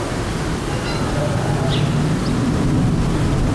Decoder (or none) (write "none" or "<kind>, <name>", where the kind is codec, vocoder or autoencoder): none